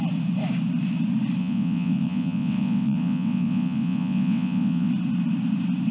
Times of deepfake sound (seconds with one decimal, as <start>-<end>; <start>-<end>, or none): 1.4-4.9